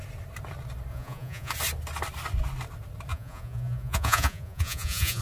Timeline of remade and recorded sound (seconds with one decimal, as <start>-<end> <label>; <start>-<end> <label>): 0.0-0.9 recorded; 0.9-1.5 remade; 1.5-3.1 recorded; 3.1-5.2 remade